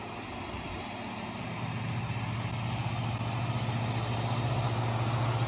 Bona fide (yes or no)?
yes